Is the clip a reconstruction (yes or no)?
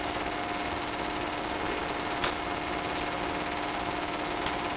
no